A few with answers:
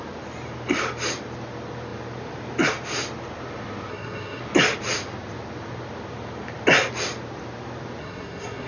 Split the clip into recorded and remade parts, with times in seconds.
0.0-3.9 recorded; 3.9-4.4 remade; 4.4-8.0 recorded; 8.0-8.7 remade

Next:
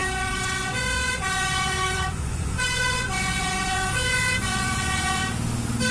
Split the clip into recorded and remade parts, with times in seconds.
0.0-5.2 remade; 5.2-5.9 recorded

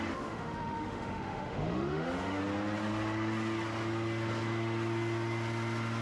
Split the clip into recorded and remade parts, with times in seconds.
0.0-2.4 remade; 2.4-6.0 recorded

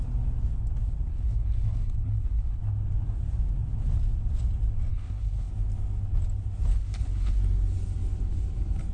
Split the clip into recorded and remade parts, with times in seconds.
0.0-1.1 recorded; 1.1-2.6 remade; 2.6-4.9 recorded; 4.9-5.5 remade; 5.5-6.7 recorded; 6.7-7.4 remade; 7.4-8.9 recorded

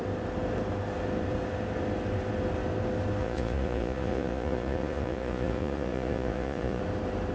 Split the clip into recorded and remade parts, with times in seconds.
0.0-3.2 recorded; 3.2-6.8 remade; 6.8-7.3 recorded

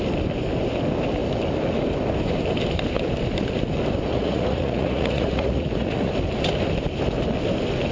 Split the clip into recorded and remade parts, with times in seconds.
0.0-4.1 recorded; 4.1-6.1 remade; 6.1-7.9 recorded

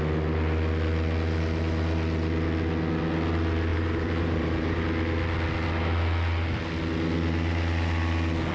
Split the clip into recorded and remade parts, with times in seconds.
0.0-3.7 recorded; 3.7-4.8 remade; 4.8-8.5 recorded

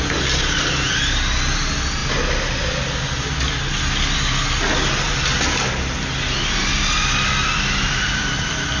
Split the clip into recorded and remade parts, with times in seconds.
0.0-8.8 recorded